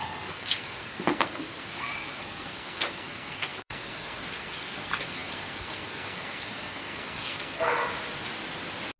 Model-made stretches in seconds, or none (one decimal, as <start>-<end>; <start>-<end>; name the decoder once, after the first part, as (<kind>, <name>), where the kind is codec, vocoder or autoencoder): 0.0-7.8 (codec, SNAC)

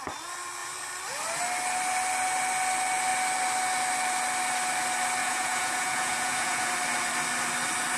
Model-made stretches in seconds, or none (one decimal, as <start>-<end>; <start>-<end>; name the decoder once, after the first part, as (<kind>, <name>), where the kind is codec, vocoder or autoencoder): 5.2-6.7 (vocoder, Vocos)

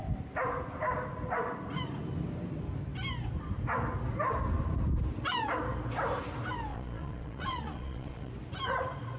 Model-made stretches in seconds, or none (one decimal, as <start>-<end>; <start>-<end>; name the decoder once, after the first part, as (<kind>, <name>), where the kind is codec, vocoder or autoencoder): 6.7-8.3 (vocoder, Vocos)

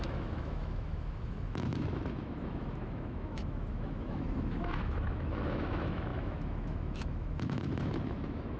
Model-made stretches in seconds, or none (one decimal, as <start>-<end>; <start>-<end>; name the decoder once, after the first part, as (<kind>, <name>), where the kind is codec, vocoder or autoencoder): 0.0-8.6 (autoencoder, DAC-VAE)

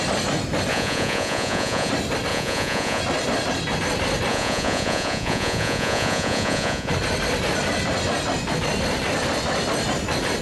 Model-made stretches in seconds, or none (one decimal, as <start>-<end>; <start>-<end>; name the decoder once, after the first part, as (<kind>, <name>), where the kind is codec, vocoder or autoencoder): 0.7-1.9 (vocoder, Vocos); 2.3-3.0; 4.3-6.9

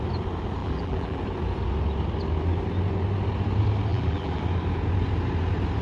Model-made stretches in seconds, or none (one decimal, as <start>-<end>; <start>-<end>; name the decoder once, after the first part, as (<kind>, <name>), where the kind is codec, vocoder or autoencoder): 0.6-1.2 (vocoder, BigVGAN v2); 3.9-4.4

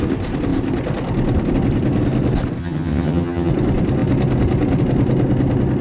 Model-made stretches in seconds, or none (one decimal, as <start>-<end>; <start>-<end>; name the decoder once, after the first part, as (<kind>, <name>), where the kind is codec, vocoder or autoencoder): 2.6-3.5 (vocoder, HiFi-GAN)